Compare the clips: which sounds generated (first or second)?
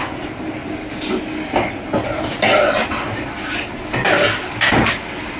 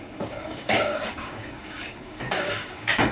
second